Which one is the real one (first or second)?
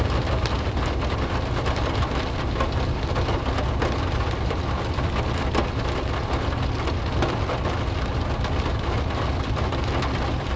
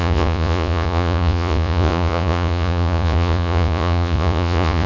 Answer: first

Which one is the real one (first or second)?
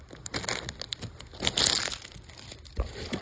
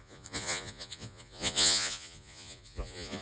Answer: first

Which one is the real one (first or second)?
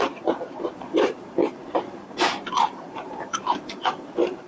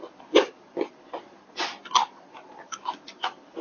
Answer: second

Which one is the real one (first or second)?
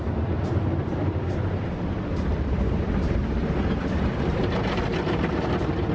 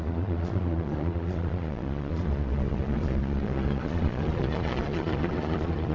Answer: first